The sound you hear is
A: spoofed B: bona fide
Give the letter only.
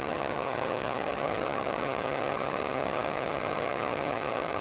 A